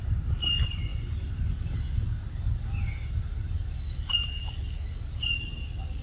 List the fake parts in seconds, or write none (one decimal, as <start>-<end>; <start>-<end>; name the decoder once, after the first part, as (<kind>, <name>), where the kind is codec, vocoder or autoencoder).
none